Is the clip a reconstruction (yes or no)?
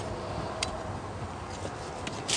no